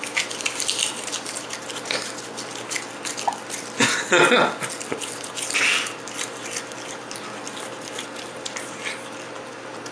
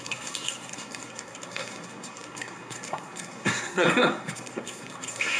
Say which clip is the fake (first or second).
second